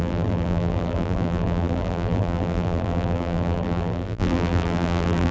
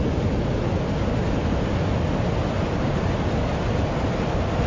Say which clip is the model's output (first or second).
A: first